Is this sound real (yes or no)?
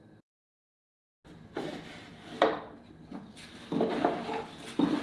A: yes